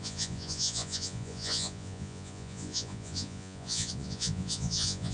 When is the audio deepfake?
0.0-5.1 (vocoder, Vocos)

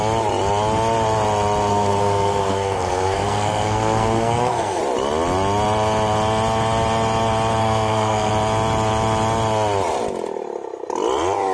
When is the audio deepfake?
1.7-4.8 (codec, SNAC); 7.6-8.3